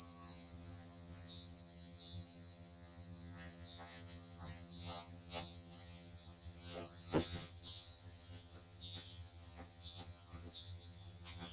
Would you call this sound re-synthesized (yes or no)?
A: yes